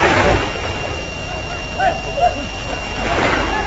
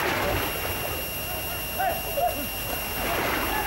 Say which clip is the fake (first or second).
first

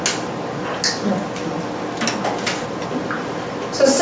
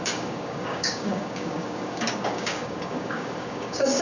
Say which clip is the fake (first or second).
second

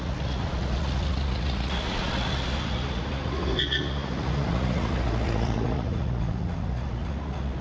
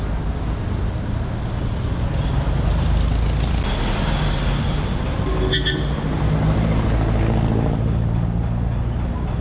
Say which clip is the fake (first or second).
first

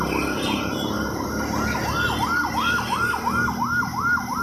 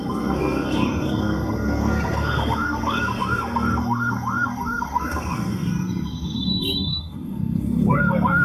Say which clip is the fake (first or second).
second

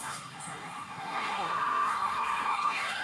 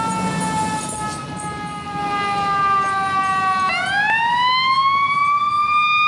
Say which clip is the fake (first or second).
first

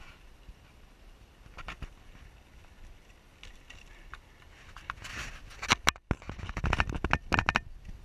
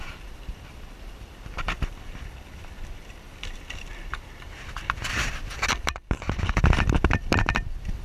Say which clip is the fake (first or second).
second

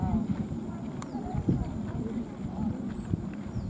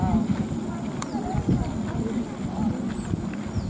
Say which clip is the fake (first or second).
first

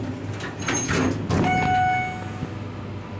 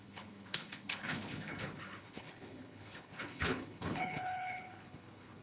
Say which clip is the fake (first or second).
second